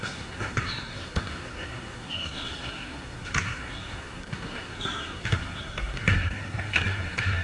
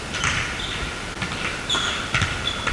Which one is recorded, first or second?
second